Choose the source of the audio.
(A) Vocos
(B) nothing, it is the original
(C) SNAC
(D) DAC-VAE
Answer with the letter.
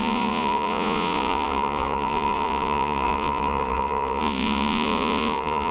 A